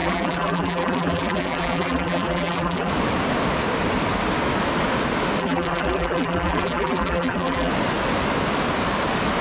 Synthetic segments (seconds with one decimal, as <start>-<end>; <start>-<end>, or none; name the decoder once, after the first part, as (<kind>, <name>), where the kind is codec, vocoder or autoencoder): 0.0-2.9 (vocoder, BigVGAN v2); 5.4-7.7